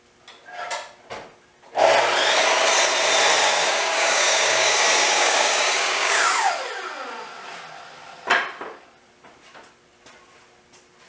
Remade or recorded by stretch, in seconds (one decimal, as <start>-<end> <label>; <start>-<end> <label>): 0.0-3.4 recorded; 3.4-6.5 remade; 6.5-11.1 recorded